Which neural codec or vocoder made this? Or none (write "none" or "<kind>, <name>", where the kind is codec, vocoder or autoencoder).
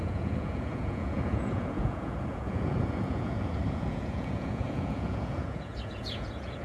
vocoder, Vocos